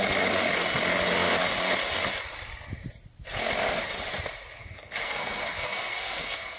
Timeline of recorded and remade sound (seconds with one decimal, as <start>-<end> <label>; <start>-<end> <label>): 0.0-4.6 recorded; 4.6-6.6 remade